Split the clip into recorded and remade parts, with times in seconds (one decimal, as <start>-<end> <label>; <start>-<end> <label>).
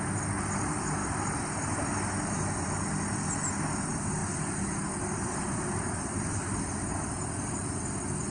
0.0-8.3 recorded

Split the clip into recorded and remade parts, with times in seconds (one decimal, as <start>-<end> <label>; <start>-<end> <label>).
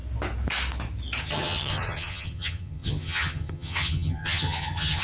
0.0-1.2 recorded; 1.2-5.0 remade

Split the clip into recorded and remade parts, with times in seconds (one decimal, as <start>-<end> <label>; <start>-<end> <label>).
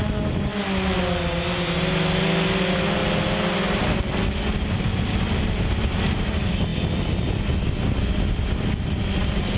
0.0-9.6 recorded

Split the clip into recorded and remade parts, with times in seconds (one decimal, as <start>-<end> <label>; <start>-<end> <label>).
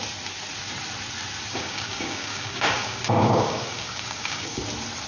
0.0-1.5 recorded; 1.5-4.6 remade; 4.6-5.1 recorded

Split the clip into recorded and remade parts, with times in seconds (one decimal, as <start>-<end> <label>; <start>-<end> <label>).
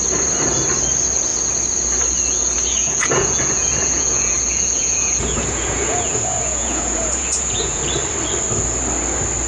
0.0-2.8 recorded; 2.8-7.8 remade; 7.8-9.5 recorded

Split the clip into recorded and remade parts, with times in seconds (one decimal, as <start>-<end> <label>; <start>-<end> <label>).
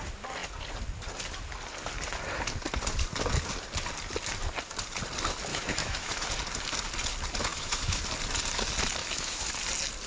0.0-5.5 recorded; 5.5-6.3 remade; 6.3-7.5 recorded; 7.5-8.0 remade; 8.0-9.0 recorded; 9.0-9.5 remade; 9.5-10.1 recorded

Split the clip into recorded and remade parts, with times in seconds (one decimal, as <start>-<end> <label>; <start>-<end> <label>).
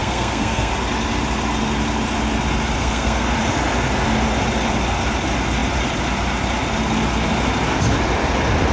0.0-0.7 remade; 0.7-2.8 recorded; 2.8-3.3 remade; 3.3-8.7 recorded